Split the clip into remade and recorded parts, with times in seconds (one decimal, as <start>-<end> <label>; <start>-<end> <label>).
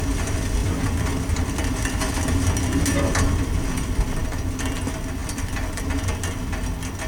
0.0-0.6 recorded; 0.6-2.1 remade; 2.1-5.2 recorded; 5.2-5.8 remade; 5.8-7.1 recorded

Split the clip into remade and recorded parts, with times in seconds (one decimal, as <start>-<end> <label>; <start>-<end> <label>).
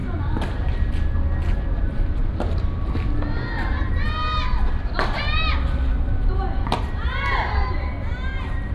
0.0-1.7 recorded; 1.7-2.2 remade; 2.2-5.5 recorded; 5.5-8.7 remade